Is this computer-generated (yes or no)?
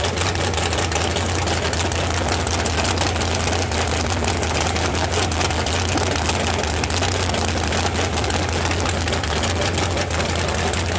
no